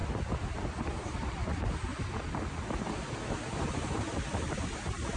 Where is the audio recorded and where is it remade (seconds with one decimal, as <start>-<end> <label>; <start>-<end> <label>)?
0.0-0.5 recorded; 0.5-1.9 remade; 1.9-4.5 recorded; 4.5-5.2 remade